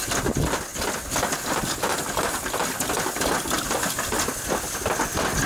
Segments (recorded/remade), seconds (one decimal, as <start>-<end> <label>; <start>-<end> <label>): 0.0-5.5 recorded